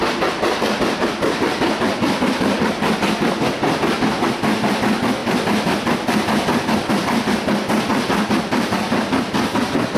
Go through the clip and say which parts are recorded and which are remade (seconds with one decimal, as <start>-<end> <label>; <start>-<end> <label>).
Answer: 0.0-5.2 recorded; 5.2-6.9 remade; 6.9-7.9 recorded; 7.9-8.8 remade; 8.8-10.0 recorded